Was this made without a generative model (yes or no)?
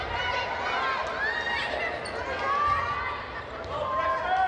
yes